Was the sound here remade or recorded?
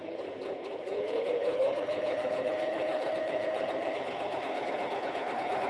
remade